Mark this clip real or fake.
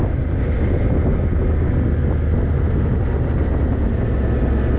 real